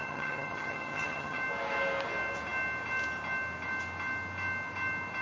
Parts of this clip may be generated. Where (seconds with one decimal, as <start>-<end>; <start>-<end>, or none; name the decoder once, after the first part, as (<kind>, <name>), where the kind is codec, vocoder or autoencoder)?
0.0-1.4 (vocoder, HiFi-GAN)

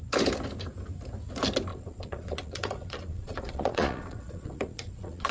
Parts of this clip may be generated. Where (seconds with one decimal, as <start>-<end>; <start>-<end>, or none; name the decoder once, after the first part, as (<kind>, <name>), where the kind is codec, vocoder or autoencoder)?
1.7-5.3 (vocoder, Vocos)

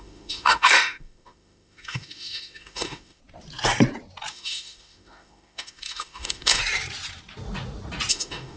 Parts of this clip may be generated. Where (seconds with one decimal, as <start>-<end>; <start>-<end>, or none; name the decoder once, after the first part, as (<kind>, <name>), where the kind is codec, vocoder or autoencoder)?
0.0-3.2 (autoencoder, DAC-VAE); 4.3-6.6; 8.1-8.6